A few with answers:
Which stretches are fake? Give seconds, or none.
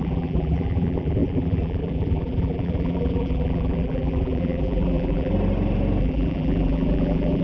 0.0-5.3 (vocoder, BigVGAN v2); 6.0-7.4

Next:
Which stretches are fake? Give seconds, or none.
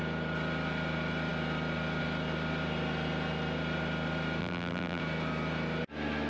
4.4-5.0 (vocoder, BigVGAN v2)